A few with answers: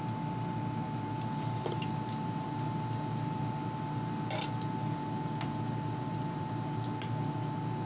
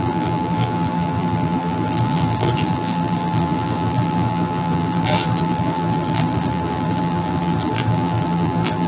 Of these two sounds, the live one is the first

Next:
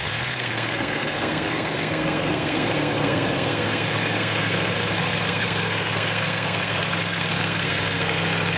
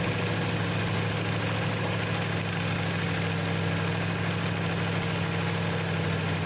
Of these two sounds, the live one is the second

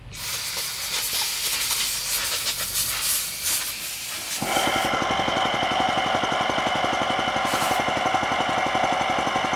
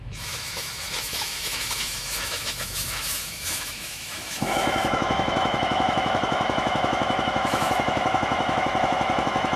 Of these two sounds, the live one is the first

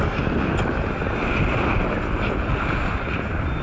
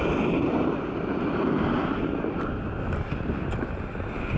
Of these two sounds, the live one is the first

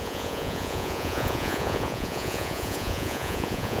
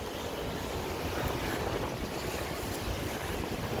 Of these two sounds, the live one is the second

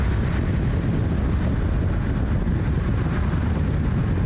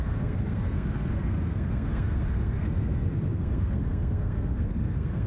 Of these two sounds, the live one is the first